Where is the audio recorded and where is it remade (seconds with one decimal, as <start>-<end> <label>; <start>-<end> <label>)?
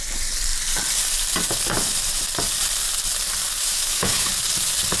0.0-3.6 recorded; 3.6-4.3 remade; 4.3-5.0 recorded